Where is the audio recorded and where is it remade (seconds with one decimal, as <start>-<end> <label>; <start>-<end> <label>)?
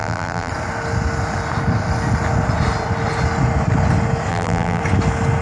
0.0-0.5 remade; 0.5-4.3 recorded; 4.3-4.8 remade; 4.8-5.4 recorded